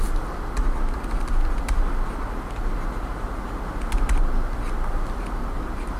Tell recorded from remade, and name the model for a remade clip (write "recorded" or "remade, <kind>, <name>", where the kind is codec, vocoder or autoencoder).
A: recorded